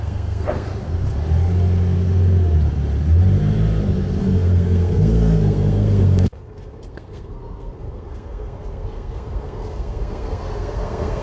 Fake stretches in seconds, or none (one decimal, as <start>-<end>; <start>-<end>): 0.0-0.7; 4.2-11.2